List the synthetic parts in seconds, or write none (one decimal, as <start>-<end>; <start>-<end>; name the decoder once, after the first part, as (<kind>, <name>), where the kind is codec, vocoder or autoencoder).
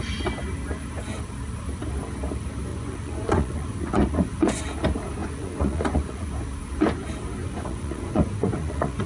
2.7-4.6 (vocoder, Vocos); 5.2-6.3; 7.4-9.1